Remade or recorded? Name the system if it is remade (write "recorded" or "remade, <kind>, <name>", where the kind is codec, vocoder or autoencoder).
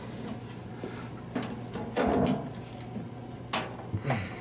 recorded